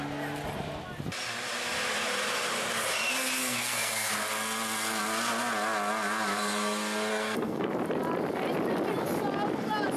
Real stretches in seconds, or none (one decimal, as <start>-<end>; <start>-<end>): 0.0-3.4; 4.1-7.1; 7.7-10.0